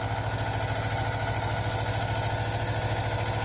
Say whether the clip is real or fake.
real